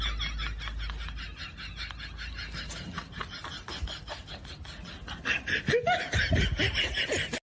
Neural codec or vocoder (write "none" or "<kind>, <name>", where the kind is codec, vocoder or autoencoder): none